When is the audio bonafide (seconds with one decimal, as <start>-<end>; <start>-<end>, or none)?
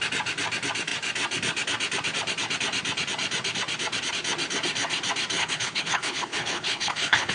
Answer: 0.0-5.4